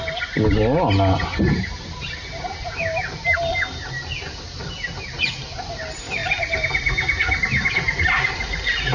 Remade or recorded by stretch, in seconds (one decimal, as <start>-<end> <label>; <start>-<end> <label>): 0.0-8.9 recorded